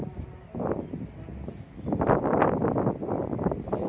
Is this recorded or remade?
recorded